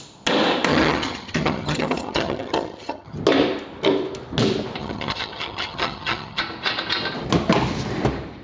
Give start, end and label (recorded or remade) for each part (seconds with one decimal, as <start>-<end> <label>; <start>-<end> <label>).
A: 0.0-0.7 recorded; 0.7-3.2 remade; 3.2-4.8 recorded; 4.8-6.4 remade; 6.4-8.4 recorded